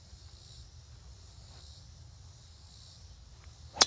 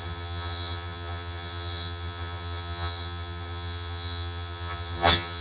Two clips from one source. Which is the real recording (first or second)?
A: first